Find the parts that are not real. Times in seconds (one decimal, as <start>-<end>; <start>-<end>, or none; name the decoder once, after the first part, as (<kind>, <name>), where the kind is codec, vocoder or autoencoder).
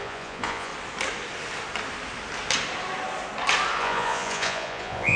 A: 0.0-0.7 (vocoder, Vocos); 3.8-5.2